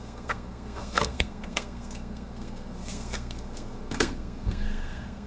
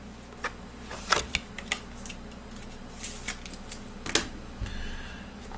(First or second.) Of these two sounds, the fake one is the first